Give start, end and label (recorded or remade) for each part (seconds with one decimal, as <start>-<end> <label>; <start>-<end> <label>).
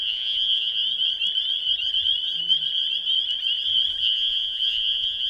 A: 0.0-0.8 remade; 0.8-4.0 recorded; 4.0-5.3 remade